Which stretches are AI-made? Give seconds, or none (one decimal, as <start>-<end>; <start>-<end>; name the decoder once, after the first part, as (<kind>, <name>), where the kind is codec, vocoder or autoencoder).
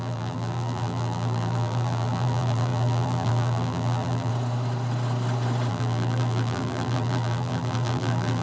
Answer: 0.0-4.3 (vocoder, BigVGAN v2); 5.7-8.4